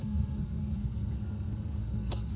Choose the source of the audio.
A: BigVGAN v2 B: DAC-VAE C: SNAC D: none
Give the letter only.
C